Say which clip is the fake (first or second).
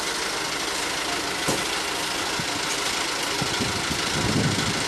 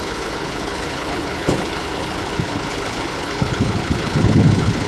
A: second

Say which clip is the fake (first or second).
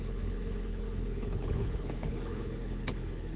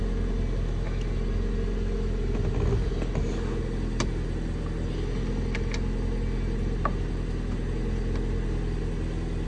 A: first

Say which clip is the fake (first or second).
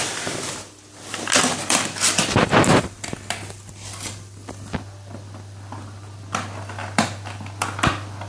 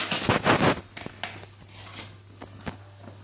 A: first